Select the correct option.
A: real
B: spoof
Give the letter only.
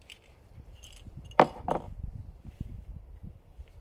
B